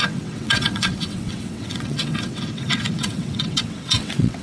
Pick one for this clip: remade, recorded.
remade